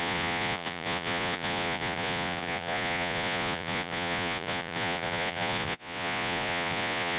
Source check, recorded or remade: remade